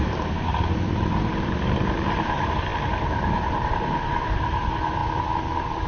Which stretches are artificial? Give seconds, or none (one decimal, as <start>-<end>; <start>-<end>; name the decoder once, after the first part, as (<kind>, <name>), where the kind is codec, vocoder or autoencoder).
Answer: 0.0-5.0 (vocoder, BigVGAN v2)